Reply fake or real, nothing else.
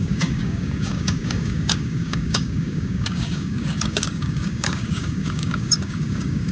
fake